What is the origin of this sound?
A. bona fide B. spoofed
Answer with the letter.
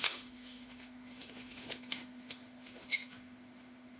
B